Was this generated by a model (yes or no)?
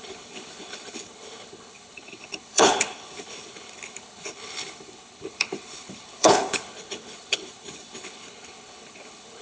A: yes